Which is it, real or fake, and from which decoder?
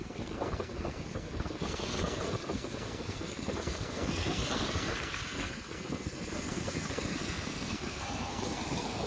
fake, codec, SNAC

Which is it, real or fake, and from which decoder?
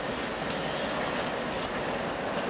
real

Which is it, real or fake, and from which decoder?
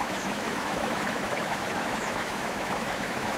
fake, autoencoder, DAC-VAE